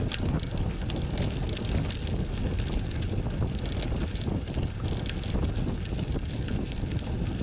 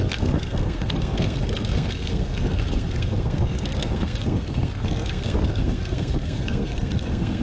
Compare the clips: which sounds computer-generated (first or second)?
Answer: second